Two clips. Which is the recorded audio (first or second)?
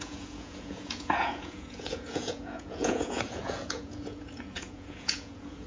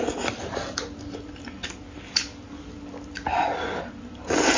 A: second